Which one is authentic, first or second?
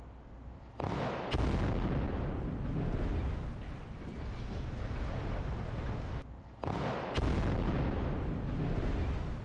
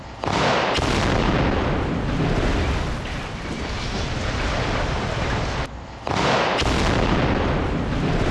first